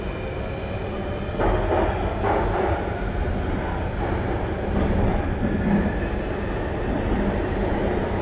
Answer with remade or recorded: recorded